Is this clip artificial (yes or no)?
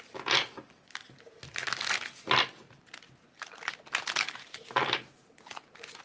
no